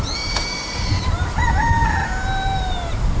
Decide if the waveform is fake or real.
real